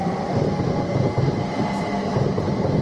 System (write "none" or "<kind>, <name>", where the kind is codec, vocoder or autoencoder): none